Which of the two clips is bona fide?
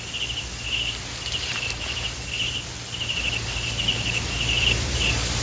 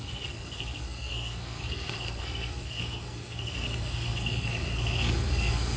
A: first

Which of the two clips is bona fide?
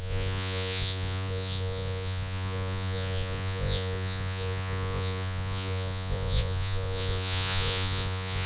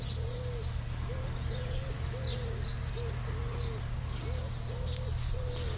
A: second